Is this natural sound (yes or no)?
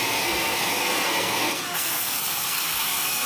no